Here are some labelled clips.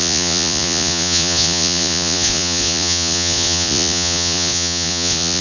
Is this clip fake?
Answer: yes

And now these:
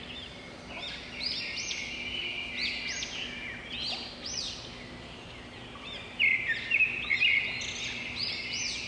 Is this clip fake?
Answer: no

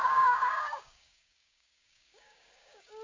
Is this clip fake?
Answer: yes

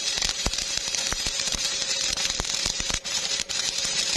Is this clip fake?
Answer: yes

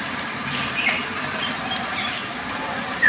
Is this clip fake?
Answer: no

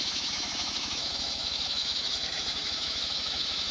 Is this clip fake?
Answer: yes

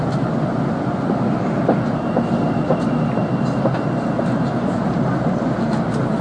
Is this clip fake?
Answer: no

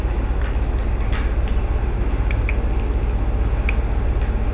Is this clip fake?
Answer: no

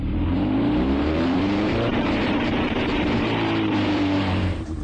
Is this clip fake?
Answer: yes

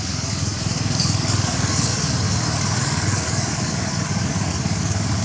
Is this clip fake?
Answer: yes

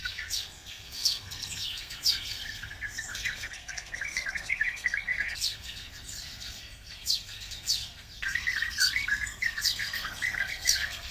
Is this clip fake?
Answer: yes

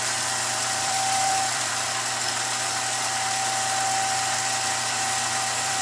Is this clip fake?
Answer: yes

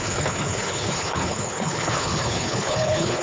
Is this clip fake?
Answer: yes